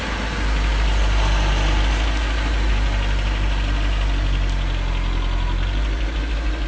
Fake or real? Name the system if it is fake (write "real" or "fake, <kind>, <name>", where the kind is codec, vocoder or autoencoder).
real